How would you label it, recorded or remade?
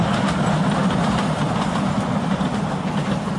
recorded